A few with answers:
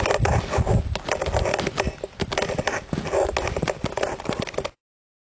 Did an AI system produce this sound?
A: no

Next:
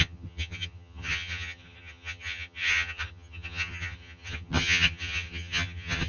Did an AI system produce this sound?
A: yes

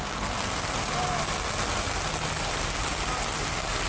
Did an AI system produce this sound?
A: no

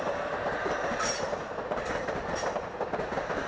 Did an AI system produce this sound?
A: no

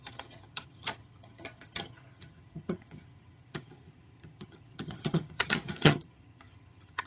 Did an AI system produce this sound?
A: yes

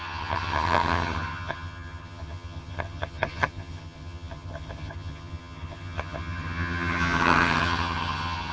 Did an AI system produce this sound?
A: yes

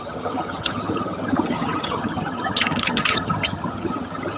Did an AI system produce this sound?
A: yes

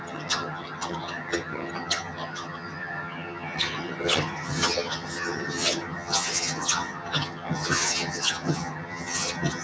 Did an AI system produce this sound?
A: yes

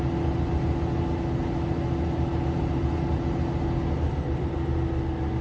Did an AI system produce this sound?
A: no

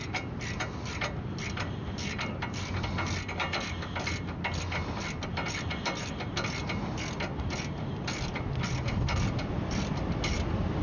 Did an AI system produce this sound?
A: no